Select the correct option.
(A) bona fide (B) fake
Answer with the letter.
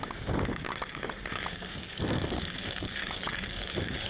B